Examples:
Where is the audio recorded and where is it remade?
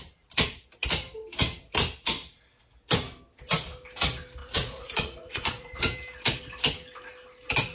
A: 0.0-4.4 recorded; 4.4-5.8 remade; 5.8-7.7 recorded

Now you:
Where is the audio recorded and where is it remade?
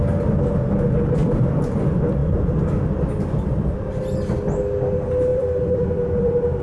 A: 0.0-1.2 recorded; 1.2-1.7 remade; 1.7-2.2 recorded; 2.2-4.0 remade; 4.0-5.3 recorded; 5.3-6.6 remade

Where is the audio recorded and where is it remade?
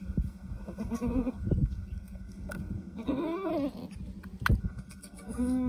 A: 0.0-3.5 remade; 3.5-4.6 recorded; 4.6-5.7 remade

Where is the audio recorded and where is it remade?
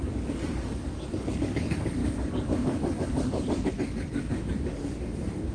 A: 0.0-5.5 remade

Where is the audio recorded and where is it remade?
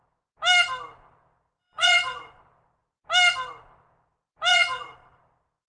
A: 0.0-1.6 recorded; 1.6-2.4 remade; 2.4-4.5 recorded; 4.5-5.2 remade; 5.2-5.7 recorded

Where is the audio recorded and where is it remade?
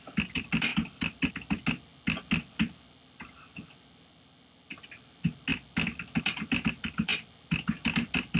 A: 0.0-8.4 recorded